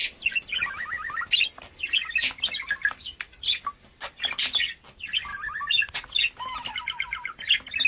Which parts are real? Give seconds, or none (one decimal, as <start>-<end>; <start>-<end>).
0.0-7.9